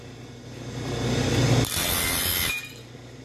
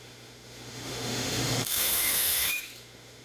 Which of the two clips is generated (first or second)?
second